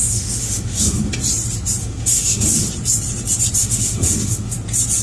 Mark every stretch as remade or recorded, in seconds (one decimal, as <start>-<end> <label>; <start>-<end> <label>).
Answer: 0.0-1.1 remade; 1.1-1.8 recorded; 1.8-2.7 remade; 2.7-3.6 recorded; 3.6-4.5 remade; 4.5-5.0 recorded